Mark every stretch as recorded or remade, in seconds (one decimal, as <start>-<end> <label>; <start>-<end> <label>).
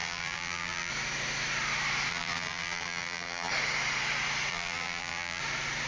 0.0-0.9 remade; 0.9-2.1 recorded; 2.1-3.5 remade; 3.5-4.5 recorded; 4.5-5.4 remade; 5.4-5.9 recorded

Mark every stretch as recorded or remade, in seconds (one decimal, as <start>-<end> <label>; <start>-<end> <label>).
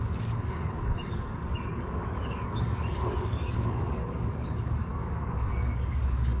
0.0-6.4 remade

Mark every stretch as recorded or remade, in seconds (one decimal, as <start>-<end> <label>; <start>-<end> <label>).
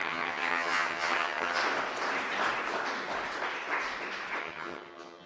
0.0-1.6 remade; 1.6-4.4 recorded; 4.4-5.3 remade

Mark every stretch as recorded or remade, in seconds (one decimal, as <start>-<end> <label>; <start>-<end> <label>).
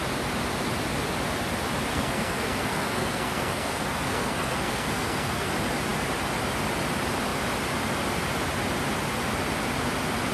0.0-1.9 recorded; 1.9-5.5 remade; 5.5-10.3 recorded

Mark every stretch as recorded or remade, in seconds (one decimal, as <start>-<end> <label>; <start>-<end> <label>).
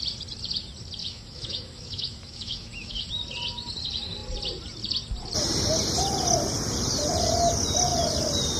0.0-1.0 recorded; 1.0-3.1 remade; 3.1-8.6 recorded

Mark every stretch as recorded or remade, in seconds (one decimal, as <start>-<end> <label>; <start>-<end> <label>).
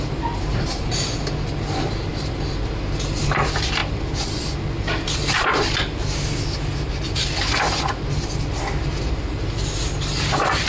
0.0-10.7 recorded